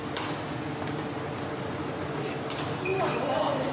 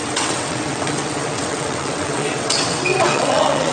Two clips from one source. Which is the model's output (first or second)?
second